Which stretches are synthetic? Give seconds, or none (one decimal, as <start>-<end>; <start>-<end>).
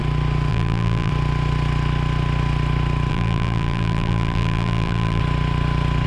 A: 0.5-1.1; 3.1-5.2